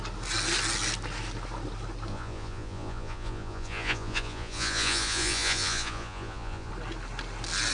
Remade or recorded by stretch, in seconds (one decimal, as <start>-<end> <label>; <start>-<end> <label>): 0.0-2.1 recorded; 2.1-6.7 remade; 6.7-7.7 recorded

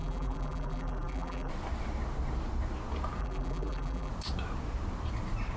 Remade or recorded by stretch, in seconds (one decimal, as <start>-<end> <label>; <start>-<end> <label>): 0.0-1.5 remade; 1.5-3.2 recorded; 3.2-4.1 remade; 4.1-5.6 recorded

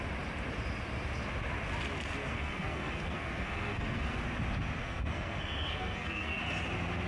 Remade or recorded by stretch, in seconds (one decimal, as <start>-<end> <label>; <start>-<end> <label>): 0.0-2.2 recorded; 2.2-4.2 remade; 4.2-4.8 recorded; 4.8-6.4 remade; 6.4-7.1 recorded

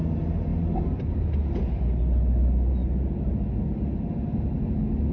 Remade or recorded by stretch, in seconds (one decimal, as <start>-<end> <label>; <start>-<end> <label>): 0.0-5.1 recorded

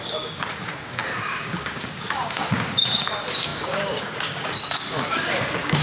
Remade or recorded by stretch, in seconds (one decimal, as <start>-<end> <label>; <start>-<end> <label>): 0.0-5.8 remade

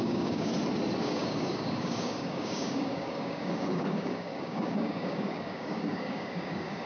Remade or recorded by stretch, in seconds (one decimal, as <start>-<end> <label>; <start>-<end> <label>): 0.0-0.5 remade; 0.5-1.0 recorded; 1.0-6.9 remade